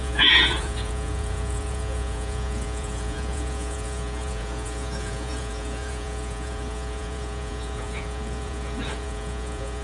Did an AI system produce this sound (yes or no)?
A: yes